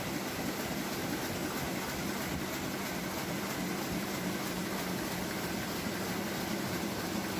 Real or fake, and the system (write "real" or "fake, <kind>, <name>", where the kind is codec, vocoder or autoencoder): real